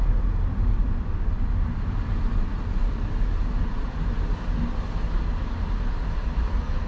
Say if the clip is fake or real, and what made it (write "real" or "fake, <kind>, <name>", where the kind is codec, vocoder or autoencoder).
real